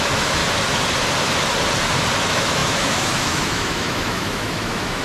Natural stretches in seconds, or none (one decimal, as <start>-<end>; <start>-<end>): 0.4-2.2